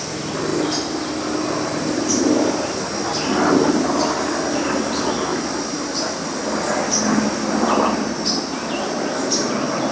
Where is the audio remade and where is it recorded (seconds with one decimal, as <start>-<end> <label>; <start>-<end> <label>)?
0.0-9.9 recorded

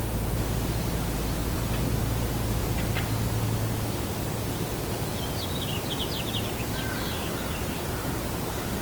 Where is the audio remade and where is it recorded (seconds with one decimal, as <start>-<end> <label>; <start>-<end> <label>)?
0.0-1.4 remade; 1.4-2.0 recorded; 2.0-2.6 remade; 2.6-7.1 recorded; 7.1-8.8 remade